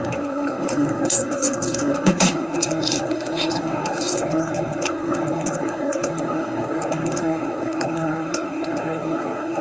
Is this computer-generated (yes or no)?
yes